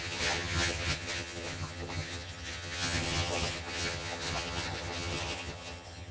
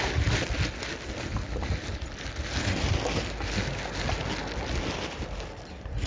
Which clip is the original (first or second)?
second